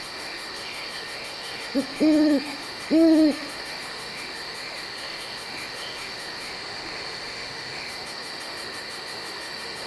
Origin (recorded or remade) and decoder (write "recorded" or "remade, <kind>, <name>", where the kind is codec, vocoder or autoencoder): remade, autoencoder, DAC-VAE